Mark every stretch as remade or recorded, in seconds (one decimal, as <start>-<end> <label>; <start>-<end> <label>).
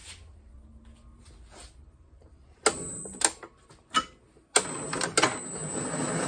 0.0-6.3 recorded